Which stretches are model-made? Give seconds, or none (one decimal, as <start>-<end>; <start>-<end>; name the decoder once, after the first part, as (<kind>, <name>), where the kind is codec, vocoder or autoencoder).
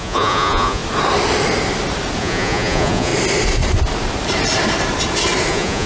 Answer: 0.0-0.8 (vocoder, Vocos); 2.2-3.1; 5.5-5.9